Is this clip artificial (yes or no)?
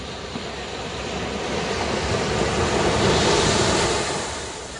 no